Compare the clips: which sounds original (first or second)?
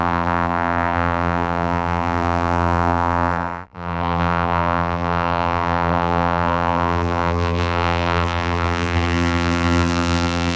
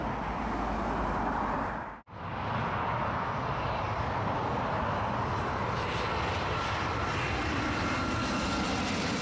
second